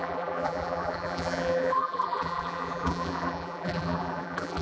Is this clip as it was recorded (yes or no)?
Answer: no